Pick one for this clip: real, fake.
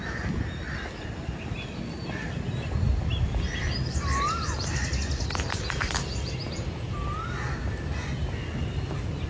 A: real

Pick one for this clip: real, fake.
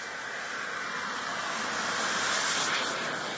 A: real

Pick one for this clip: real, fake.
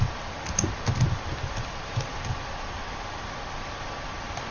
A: real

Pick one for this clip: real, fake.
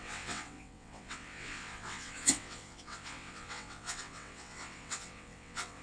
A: fake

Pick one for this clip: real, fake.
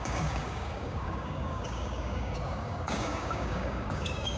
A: fake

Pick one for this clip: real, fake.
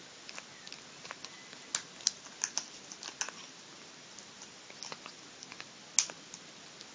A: real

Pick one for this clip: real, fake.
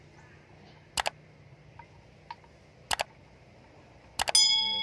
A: real